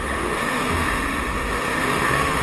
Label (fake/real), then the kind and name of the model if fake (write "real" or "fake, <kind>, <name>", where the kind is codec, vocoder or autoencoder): fake, autoencoder, DAC-VAE